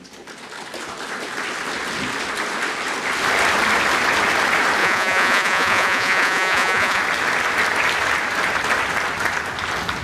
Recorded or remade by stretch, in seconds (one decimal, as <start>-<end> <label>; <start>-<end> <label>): 0.0-4.8 recorded; 4.8-7.0 remade; 7.0-10.0 recorded